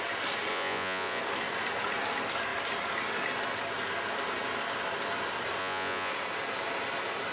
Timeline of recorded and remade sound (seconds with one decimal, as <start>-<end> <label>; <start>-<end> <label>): 0.0-0.5 recorded; 0.5-1.2 remade; 1.2-5.6 recorded; 5.6-6.1 remade; 6.1-7.3 recorded